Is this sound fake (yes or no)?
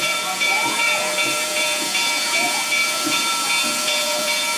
yes